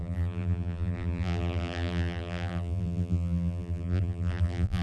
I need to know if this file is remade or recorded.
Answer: remade